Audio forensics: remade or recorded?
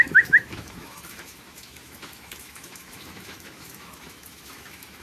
remade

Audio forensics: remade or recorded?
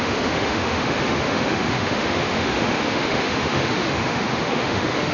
remade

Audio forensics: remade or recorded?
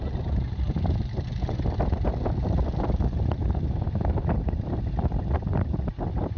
recorded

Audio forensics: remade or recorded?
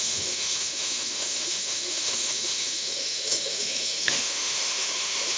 remade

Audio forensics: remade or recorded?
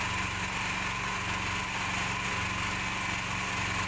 recorded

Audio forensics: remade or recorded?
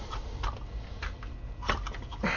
recorded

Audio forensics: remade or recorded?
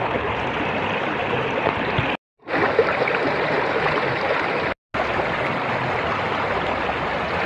recorded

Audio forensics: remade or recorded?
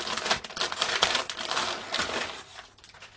recorded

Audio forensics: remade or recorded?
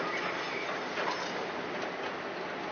recorded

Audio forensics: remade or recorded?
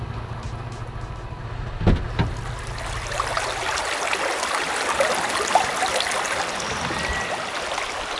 recorded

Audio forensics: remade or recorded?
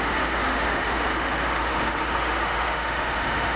remade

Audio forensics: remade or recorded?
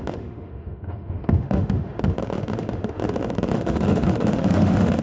remade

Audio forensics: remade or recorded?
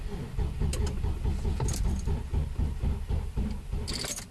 recorded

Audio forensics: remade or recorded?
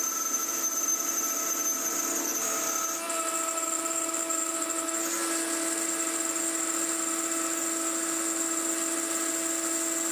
recorded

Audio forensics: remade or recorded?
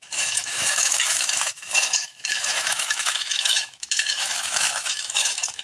remade